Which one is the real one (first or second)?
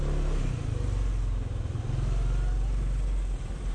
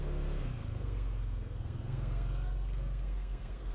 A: first